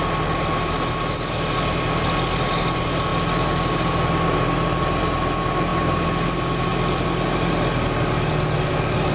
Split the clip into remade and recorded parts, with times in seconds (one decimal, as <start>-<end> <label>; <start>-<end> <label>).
0.0-9.1 recorded